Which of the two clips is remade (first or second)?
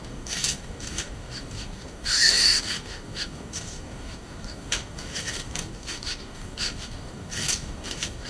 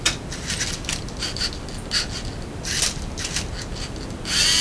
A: first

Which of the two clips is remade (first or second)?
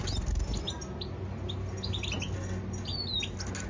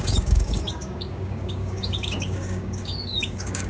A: second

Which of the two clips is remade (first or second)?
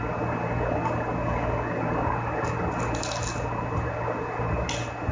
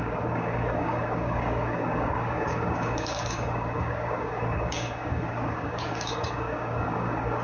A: second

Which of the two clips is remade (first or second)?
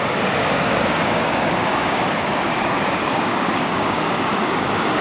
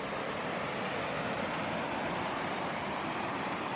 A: first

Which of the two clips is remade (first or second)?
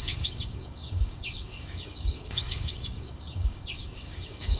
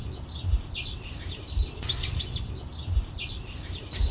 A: first